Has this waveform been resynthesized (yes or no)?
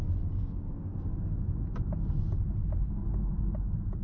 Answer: no